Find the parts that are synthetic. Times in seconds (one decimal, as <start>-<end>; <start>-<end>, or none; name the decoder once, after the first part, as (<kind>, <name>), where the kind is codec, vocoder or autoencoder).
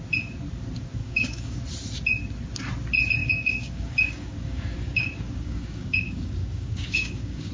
1.0-1.6 (codec, DAC); 3.2-7.5